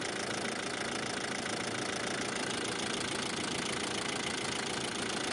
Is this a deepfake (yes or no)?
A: no